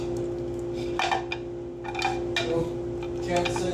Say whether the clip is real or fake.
real